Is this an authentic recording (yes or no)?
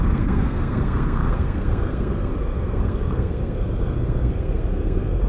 no